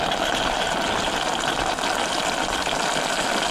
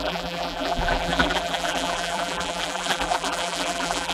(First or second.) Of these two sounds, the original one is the first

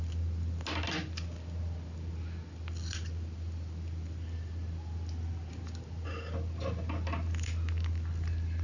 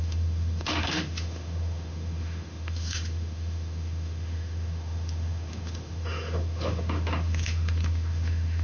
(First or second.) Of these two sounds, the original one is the first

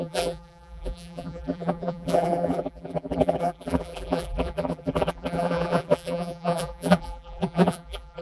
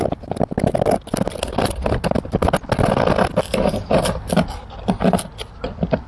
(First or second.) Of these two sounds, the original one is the second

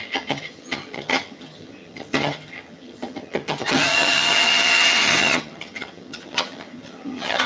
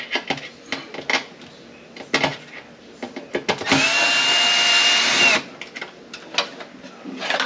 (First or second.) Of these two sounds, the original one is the second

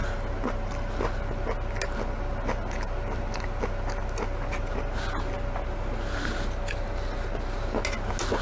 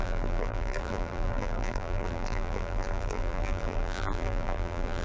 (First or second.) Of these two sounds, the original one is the first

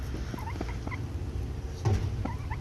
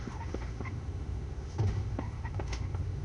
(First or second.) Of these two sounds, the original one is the first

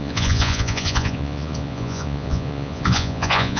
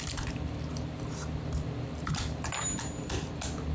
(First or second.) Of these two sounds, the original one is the second